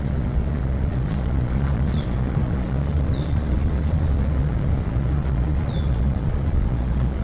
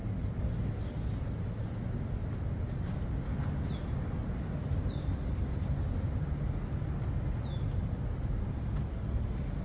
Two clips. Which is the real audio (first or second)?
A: second